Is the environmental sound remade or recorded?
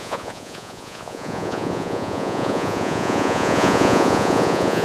remade